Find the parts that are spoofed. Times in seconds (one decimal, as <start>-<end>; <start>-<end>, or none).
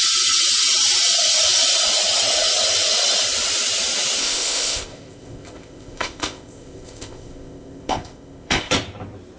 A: 4.2-8.7